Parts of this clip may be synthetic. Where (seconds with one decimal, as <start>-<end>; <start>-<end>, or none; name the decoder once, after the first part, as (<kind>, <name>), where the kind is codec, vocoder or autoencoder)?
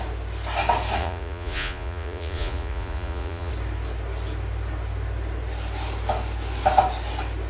1.0-3.5 (vocoder, Vocos)